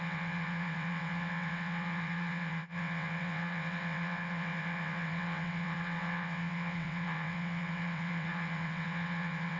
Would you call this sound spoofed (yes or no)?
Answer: yes